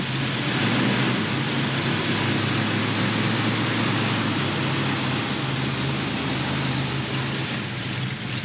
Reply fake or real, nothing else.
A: real